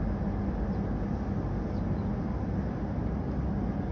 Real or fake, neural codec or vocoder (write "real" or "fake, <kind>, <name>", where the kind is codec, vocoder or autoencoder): real